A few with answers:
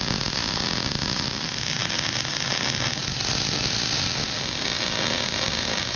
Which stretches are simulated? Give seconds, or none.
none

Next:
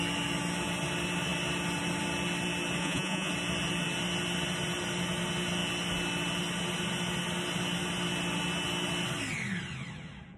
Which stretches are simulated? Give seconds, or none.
2.8-3.3

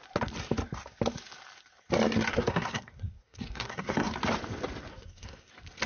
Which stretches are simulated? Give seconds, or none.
2.3-4.1; 4.9-5.5

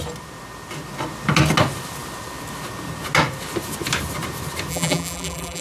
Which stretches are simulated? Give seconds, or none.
4.7-5.6

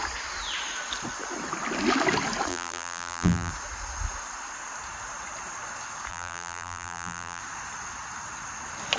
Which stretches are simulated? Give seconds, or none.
2.5-3.5; 6.1-7.4